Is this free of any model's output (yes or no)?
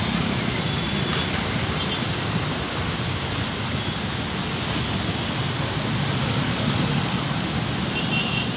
yes